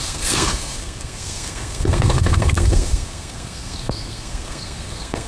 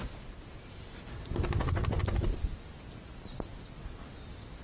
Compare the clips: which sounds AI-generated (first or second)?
first